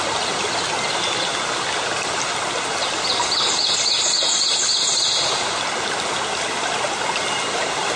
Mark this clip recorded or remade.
recorded